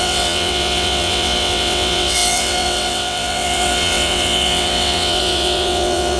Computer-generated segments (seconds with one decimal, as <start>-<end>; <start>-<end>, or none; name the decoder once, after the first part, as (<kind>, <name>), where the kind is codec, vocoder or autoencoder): 0.0-6.2 (vocoder, WaveNeXt)